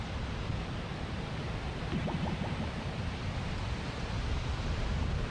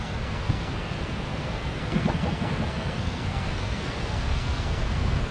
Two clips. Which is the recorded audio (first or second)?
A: first